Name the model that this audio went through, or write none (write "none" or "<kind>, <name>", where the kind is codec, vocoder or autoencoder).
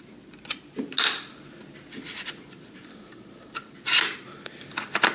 none